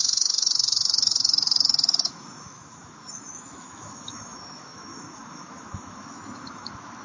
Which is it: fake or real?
fake